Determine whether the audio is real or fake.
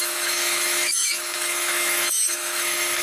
fake